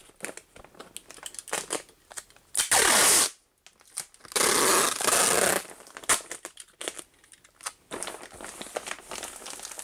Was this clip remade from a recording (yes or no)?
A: no